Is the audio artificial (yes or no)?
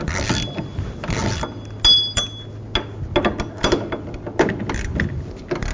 no